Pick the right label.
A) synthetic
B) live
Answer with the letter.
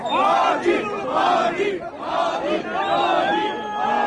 B